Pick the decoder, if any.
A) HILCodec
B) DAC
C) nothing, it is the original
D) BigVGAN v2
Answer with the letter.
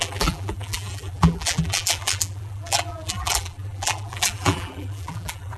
D